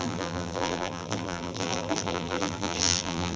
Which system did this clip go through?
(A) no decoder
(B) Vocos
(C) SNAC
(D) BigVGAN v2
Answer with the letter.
D